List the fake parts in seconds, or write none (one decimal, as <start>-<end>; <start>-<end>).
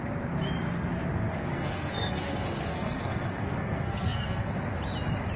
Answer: 1.5-4.5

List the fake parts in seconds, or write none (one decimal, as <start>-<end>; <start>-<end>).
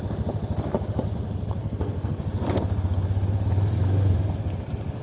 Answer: 1.6-2.2